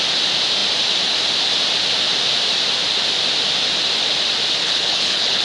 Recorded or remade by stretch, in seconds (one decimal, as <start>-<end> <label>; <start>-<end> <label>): 0.0-4.6 recorded; 4.6-5.4 remade